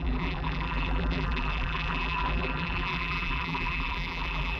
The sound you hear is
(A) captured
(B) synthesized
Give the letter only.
B